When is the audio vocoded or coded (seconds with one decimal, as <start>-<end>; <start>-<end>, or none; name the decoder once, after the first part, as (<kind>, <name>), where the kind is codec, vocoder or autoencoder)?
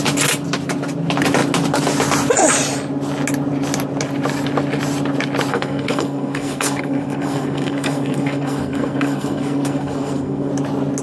5.5-10.5 (codec, SNAC)